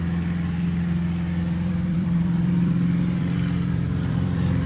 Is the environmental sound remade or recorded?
remade